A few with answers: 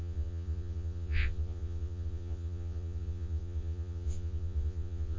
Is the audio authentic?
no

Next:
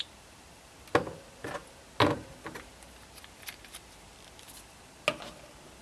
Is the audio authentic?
yes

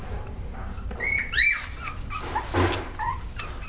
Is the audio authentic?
yes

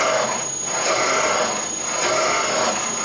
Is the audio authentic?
yes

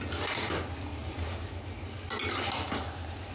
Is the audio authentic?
yes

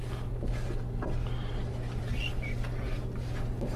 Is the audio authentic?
yes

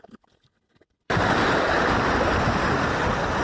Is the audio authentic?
no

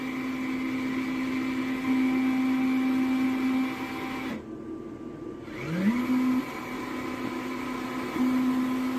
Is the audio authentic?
yes